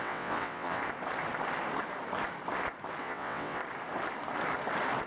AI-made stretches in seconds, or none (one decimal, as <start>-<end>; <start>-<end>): 0.0-0.8; 3.0-3.6